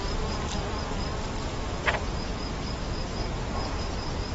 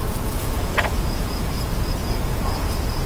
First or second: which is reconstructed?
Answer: second